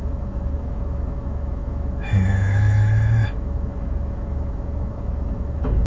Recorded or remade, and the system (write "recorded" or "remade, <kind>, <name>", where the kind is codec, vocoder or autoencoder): remade, autoencoder, DAC-VAE